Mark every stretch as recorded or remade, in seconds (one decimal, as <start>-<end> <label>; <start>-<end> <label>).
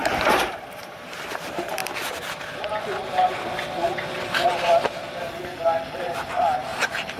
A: 0.0-1.8 remade; 1.8-5.9 recorded; 5.9-7.2 remade